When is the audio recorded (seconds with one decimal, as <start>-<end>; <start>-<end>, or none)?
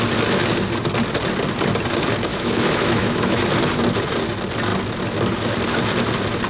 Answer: 0.0-2.3; 3.4-6.5